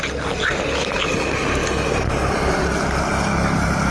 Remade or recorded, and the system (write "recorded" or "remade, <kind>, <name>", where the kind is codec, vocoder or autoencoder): recorded